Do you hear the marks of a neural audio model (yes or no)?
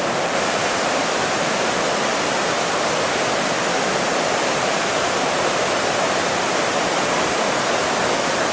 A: no